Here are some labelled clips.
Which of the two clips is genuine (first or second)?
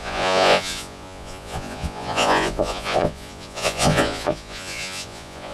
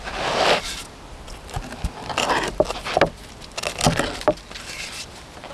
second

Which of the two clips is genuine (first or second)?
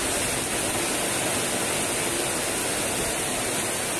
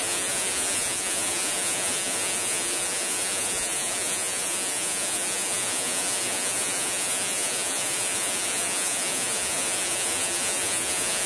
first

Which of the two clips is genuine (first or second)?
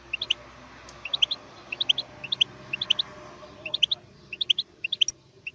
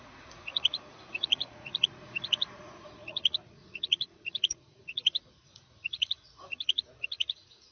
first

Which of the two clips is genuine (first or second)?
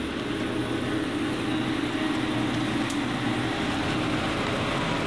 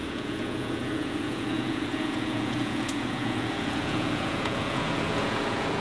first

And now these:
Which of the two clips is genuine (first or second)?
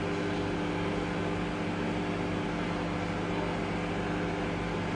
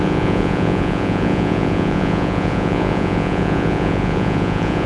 first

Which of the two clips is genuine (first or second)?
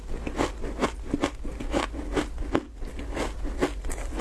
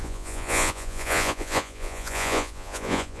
first